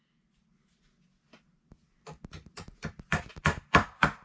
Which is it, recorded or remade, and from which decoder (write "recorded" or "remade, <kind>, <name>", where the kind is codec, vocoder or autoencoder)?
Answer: recorded